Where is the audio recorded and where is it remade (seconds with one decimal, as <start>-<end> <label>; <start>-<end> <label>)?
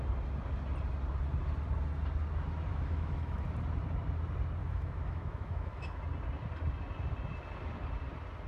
0.0-2.7 recorded; 2.7-3.4 remade; 3.4-4.6 recorded; 4.6-6.0 remade; 6.0-8.5 recorded